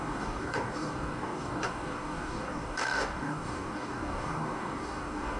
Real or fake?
fake